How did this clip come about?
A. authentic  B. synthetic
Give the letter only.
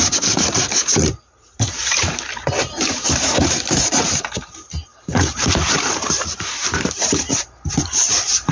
B